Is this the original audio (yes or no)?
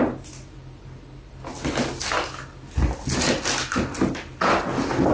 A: yes